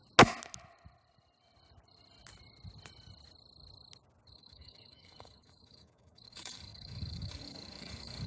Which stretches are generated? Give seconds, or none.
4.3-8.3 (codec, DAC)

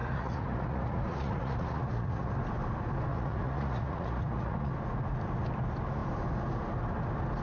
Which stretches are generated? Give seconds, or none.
0.0-2.3 (vocoder, Vocos); 3.1-4.7

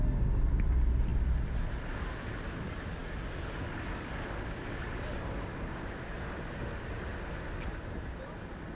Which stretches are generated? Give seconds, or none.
none

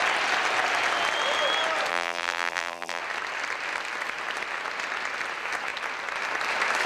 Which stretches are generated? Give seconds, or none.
1.9-3.0 (vocoder, BigVGAN v2)